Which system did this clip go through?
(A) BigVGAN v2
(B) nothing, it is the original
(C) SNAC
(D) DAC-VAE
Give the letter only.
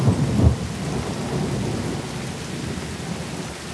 B